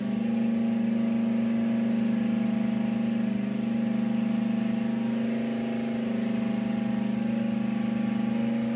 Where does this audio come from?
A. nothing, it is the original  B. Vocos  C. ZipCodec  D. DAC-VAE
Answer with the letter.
A